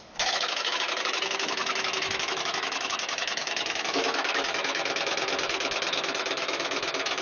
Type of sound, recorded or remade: remade